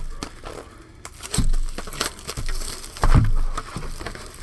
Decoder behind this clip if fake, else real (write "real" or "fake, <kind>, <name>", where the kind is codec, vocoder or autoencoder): real